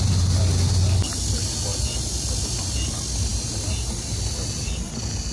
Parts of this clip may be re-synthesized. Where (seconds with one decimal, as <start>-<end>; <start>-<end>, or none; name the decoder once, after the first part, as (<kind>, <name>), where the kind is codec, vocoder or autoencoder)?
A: 3.3-3.9 (vocoder, BigVGAN v2)